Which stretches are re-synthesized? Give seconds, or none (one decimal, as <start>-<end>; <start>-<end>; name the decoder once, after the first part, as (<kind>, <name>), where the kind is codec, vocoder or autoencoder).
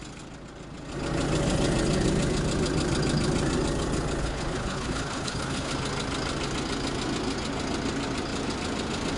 4.2-5.7 (codec, HILCodec)